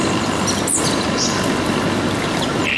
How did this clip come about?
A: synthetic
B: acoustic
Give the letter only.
B